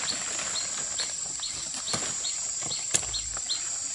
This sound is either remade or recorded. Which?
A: recorded